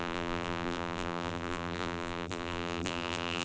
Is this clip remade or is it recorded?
remade